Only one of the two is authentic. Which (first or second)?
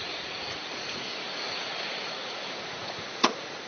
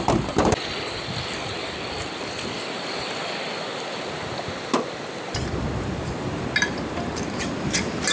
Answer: second